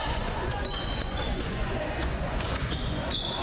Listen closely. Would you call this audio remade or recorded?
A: remade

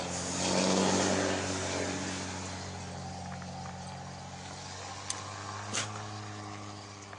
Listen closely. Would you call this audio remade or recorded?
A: recorded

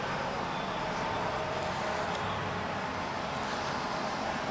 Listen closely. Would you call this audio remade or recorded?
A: recorded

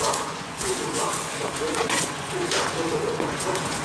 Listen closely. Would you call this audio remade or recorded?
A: remade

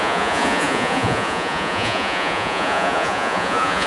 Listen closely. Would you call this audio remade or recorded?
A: remade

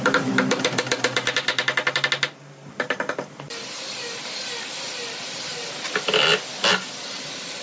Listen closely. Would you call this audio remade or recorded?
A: recorded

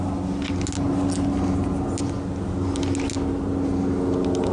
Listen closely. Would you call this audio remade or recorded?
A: recorded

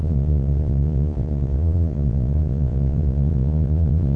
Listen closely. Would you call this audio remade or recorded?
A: remade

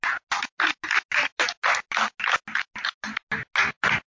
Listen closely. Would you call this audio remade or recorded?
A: recorded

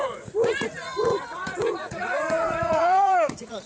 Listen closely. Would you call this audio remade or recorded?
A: remade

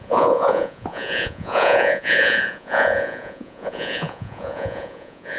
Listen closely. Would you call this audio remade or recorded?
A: remade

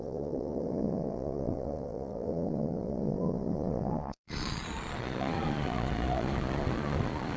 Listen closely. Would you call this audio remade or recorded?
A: remade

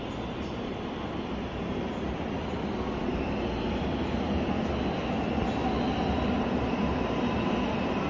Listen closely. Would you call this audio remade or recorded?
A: recorded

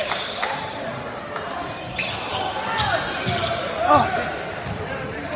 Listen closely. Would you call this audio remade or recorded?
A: recorded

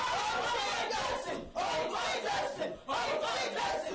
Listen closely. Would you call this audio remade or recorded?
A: remade